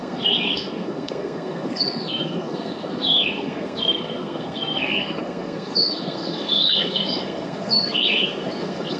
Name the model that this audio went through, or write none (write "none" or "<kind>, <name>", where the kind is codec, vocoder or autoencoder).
codec, SNAC